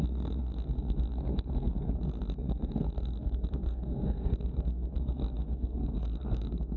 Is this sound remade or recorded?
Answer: remade